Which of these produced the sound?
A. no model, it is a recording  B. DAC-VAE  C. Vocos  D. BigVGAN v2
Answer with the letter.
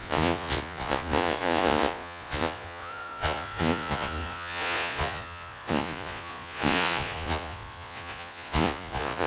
C